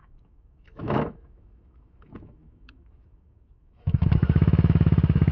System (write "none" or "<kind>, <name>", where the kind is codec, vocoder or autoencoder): autoencoder, DAC-VAE